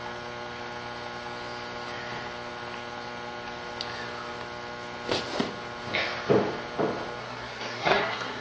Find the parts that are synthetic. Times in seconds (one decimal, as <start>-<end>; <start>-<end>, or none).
7.2-8.4